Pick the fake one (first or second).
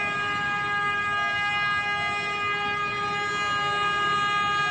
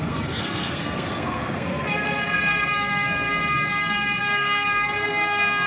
second